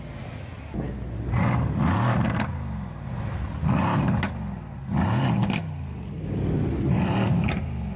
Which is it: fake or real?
real